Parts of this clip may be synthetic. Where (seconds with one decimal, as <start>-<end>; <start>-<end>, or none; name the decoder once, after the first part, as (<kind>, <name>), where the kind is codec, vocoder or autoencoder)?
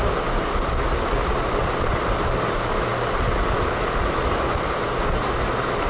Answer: none